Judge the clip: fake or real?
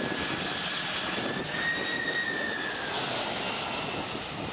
real